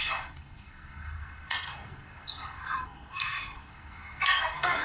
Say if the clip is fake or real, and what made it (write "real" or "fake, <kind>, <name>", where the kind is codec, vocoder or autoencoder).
fake, codec, SNAC